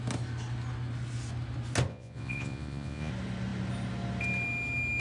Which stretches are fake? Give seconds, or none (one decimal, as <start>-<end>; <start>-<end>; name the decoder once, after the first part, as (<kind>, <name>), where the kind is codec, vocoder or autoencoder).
1.9-3.1 (vocoder, Vocos)